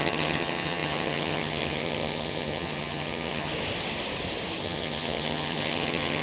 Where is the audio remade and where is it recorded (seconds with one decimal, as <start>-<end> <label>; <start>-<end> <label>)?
0.0-3.5 remade; 3.5-4.6 recorded; 4.6-6.2 remade